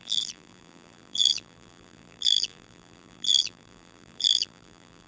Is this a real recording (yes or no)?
no